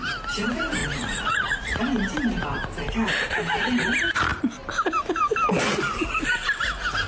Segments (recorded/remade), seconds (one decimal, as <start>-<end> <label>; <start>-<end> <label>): 0.0-0.8 recorded; 0.8-1.8 remade; 1.8-7.1 recorded